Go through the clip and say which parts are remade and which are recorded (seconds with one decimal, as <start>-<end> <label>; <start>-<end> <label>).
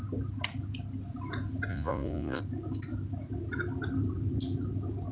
0.0-1.7 recorded; 1.7-2.4 remade; 2.4-5.1 recorded